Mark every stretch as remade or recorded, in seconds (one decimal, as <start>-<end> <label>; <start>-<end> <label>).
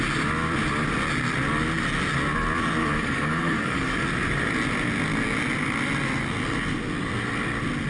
0.0-2.8 recorded; 2.8-4.0 remade; 4.0-7.9 recorded